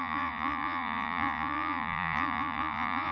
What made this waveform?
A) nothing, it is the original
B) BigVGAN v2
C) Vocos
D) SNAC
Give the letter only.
C